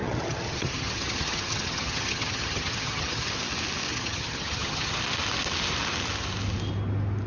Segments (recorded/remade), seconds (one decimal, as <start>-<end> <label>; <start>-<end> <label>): 0.0-3.3 remade; 3.3-3.9 recorded; 3.9-5.0 remade; 5.0-7.3 recorded